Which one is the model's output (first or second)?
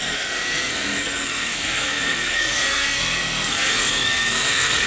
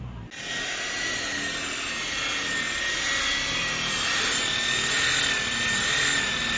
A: first